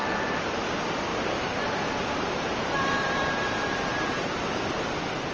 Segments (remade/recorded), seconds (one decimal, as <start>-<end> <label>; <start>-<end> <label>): 0.0-0.6 remade; 0.6-1.1 recorded; 1.1-4.2 remade; 4.2-5.3 recorded